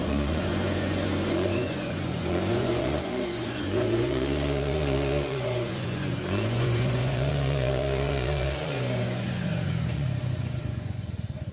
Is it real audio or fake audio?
fake